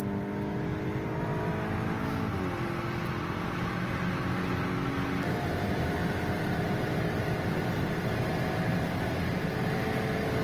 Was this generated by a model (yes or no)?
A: no